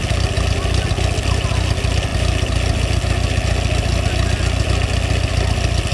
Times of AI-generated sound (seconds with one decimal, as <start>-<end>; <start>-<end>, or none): none